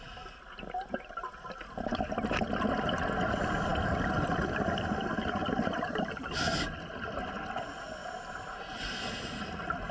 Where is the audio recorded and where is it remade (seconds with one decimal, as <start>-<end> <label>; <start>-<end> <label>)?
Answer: 0.0-8.0 recorded; 8.0-8.6 remade; 8.6-9.9 recorded